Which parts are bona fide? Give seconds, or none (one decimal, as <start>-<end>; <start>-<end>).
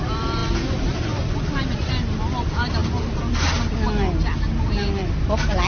0.0-5.7